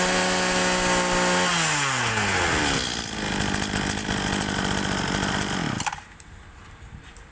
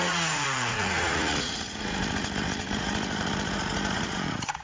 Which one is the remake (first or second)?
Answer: second